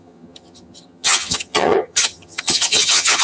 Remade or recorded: remade